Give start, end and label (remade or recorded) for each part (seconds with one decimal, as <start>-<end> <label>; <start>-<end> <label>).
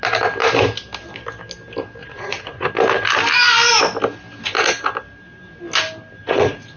0.0-2.0 recorded; 2.0-2.7 remade; 2.7-6.2 recorded; 6.2-6.8 remade